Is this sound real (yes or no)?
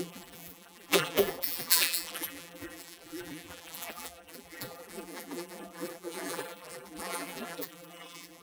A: no